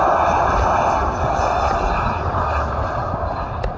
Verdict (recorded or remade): recorded